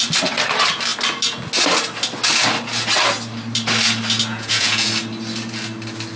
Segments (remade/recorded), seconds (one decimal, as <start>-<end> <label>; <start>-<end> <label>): 0.0-4.3 recorded; 4.3-4.9 remade; 4.9-6.2 recorded